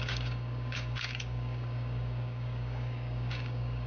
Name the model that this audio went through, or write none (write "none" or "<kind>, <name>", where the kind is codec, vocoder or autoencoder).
codec, DAC